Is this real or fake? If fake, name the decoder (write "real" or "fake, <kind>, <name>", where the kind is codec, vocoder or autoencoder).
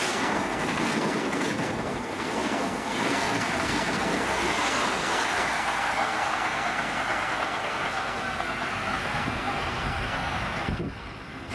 fake, codec, SNAC